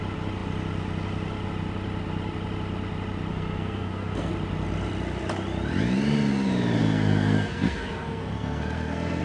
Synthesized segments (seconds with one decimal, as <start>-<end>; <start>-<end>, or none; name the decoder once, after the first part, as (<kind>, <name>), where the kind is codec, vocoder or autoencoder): 3.3-4.3 (codec, SNAC); 6.8-9.2